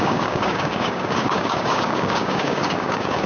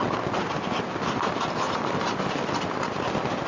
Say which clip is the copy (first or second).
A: first